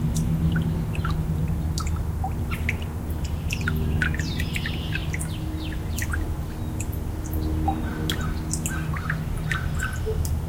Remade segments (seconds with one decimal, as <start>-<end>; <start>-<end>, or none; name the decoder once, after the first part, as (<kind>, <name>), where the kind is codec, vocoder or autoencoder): none